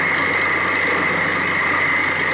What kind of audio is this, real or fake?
real